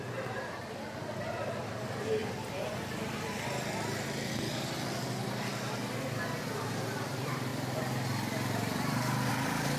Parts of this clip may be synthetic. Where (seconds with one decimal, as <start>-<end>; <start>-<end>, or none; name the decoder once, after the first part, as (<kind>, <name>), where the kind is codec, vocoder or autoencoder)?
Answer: 0.0-5.5 (vocoder, BigVGAN v2); 7.1-7.5; 9.3-9.8